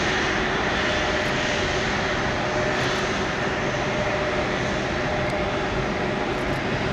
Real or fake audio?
real